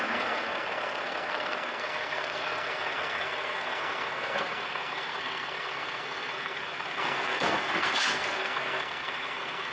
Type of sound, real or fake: fake